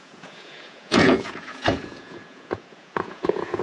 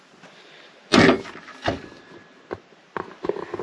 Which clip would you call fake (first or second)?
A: first